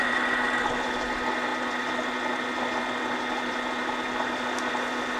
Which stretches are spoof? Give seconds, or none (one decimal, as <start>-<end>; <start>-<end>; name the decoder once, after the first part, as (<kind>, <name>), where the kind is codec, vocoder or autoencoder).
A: none